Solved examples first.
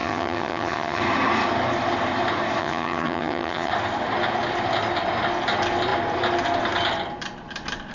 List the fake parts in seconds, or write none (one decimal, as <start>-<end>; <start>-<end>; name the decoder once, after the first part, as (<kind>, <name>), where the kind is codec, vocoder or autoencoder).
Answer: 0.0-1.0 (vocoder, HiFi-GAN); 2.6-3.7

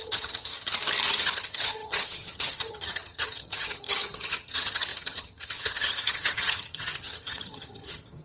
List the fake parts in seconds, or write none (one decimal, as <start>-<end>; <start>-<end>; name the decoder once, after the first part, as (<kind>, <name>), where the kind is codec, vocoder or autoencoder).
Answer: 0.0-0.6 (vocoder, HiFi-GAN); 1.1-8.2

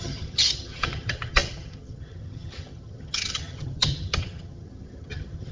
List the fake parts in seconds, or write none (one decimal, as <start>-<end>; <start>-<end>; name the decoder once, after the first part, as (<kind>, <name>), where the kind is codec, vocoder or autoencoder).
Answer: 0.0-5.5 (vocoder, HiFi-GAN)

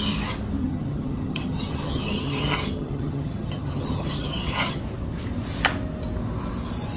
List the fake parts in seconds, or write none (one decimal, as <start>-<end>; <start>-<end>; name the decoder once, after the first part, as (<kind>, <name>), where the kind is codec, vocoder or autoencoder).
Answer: 0.6-4.8 (vocoder, HiFi-GAN)

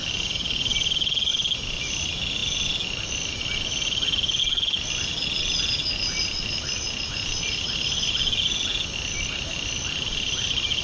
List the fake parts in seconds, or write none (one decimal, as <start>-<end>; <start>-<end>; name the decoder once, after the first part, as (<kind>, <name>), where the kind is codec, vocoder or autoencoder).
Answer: none

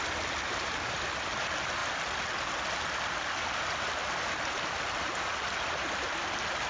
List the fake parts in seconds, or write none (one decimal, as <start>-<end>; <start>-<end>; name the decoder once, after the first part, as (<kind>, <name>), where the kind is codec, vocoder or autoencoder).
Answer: none

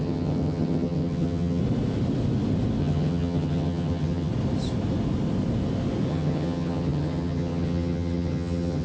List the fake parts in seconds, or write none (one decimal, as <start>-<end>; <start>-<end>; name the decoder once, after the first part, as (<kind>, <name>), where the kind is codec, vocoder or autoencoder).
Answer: 0.0-1.6 (vocoder, HiFi-GAN); 2.8-4.3; 6.1-8.8

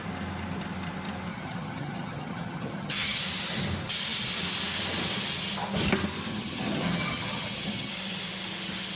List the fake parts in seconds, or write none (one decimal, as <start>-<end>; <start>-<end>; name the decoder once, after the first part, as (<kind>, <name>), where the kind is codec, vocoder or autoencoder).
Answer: 1.3-3.2 (vocoder, HiFi-GAN); 6.3-7.9